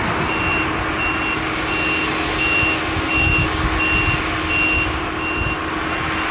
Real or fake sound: real